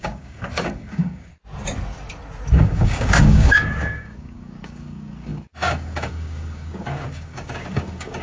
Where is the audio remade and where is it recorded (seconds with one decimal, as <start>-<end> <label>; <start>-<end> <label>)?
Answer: 0.0-1.3 remade; 1.3-2.5 recorded; 2.5-8.2 remade